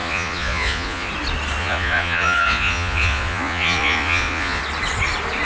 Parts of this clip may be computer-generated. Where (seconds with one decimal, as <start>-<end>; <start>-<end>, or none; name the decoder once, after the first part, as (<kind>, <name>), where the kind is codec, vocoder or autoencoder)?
0.0-1.1 (vocoder, Vocos); 1.6-4.6